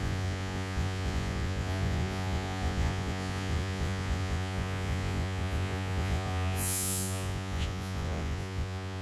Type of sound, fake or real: fake